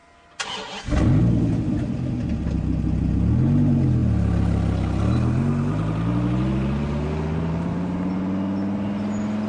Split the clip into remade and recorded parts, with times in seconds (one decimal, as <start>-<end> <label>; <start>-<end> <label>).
0.0-9.5 recorded